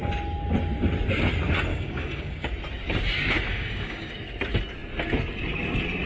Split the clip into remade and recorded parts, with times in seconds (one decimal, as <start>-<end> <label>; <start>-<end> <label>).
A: 0.0-1.7 recorded; 1.7-2.5 remade; 2.5-3.5 recorded; 3.5-4.1 remade; 4.1-6.1 recorded